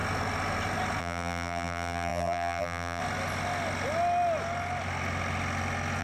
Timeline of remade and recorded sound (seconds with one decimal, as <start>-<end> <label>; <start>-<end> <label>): 0.0-1.0 recorded; 1.0-3.0 remade; 3.0-6.0 recorded